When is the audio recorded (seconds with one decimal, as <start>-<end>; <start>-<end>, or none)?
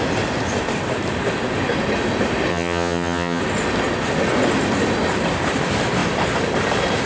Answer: 0.0-2.5; 3.4-7.1